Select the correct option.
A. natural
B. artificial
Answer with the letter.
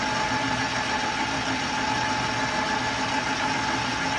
A